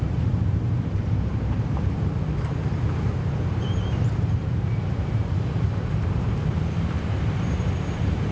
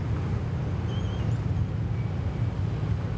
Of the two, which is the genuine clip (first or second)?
second